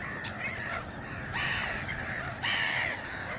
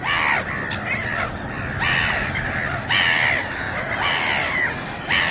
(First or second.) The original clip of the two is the second